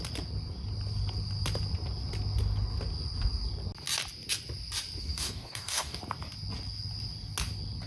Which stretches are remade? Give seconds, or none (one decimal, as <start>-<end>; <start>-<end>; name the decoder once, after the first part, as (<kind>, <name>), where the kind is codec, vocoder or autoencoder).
5.0-6.0 (codec, DAC)